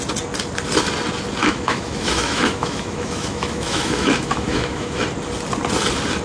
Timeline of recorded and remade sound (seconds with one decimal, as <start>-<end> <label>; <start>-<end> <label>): 0.0-1.4 recorded; 1.4-5.0 remade; 5.0-6.2 recorded